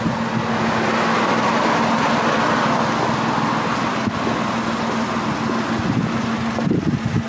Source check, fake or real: real